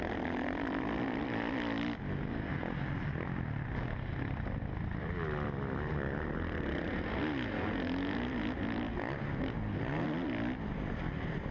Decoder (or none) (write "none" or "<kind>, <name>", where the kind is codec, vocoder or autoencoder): none